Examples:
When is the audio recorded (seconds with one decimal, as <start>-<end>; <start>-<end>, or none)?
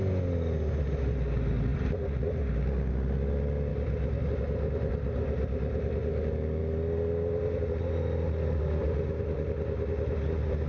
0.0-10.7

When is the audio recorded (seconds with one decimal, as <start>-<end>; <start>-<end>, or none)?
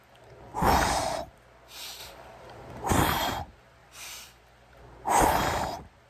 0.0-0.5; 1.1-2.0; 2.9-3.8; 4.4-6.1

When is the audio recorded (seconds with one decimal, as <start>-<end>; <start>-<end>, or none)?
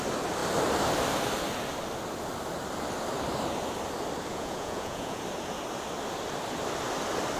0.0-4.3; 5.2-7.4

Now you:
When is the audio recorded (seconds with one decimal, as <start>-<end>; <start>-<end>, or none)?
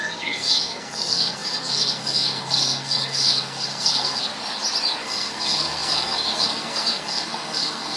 4.3-5.0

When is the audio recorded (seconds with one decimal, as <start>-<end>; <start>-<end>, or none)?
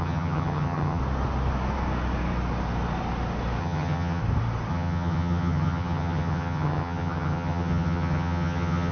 1.0-3.6; 4.2-4.7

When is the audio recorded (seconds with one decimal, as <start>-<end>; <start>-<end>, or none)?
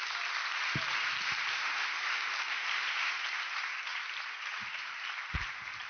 0.0-5.9